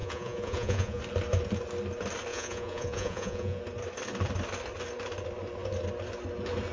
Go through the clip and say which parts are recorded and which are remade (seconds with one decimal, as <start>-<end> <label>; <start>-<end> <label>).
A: 0.0-1.0 remade; 1.0-2.3 recorded; 2.3-3.6 remade; 3.6-6.7 recorded